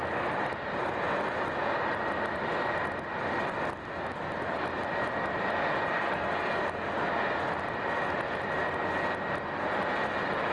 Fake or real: real